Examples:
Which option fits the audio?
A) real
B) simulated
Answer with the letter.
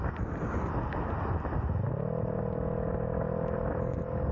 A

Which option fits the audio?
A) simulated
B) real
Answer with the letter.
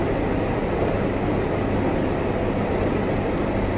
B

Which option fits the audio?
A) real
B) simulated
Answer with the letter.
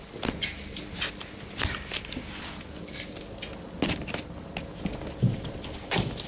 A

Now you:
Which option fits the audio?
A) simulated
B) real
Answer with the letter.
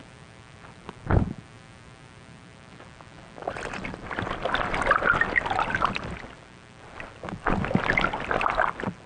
B